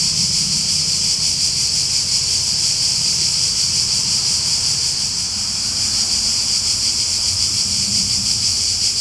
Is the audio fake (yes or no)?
yes